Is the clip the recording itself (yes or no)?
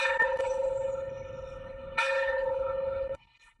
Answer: no